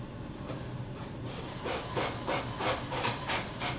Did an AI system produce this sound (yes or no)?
yes